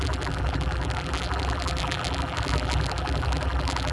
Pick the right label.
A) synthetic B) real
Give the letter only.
A